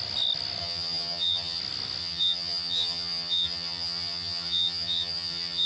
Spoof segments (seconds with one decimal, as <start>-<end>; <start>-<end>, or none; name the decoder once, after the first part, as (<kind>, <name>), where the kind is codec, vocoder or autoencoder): 0.6-1.6 (vocoder, HiFi-GAN); 2.0-5.7